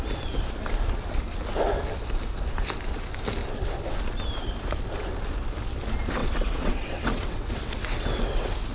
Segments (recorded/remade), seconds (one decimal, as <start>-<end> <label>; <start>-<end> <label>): 0.0-6.2 recorded; 6.2-8.7 remade